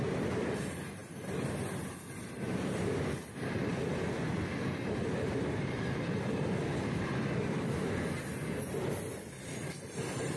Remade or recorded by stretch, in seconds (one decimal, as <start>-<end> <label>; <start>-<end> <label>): 0.0-10.4 recorded